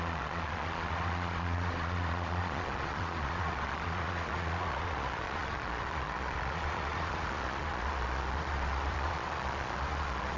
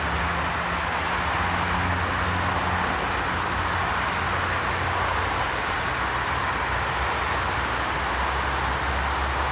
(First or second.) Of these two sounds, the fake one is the first